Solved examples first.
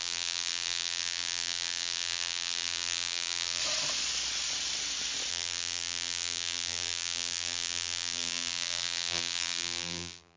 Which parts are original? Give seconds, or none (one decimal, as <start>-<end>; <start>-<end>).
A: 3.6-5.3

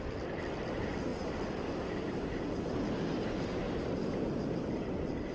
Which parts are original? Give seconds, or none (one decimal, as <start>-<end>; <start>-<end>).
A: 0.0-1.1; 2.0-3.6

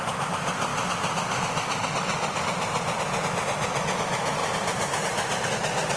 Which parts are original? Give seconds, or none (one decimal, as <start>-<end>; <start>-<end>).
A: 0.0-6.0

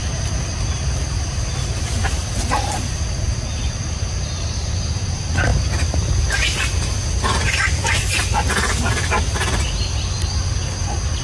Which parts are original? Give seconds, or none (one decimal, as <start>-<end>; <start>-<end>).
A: 5.5-11.2

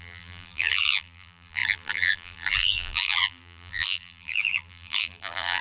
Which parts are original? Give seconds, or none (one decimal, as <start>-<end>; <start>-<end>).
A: none

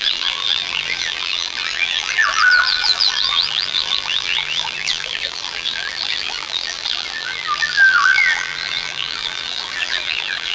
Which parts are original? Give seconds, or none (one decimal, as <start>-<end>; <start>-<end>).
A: none